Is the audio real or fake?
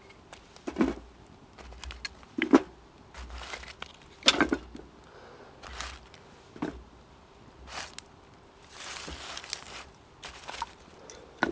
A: real